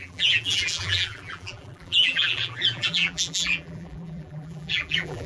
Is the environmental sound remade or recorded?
remade